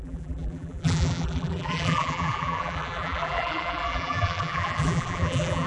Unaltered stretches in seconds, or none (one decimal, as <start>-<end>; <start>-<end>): none